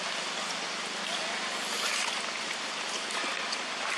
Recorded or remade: remade